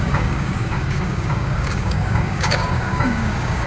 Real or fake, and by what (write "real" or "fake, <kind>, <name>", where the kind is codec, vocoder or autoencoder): fake, codec, DAC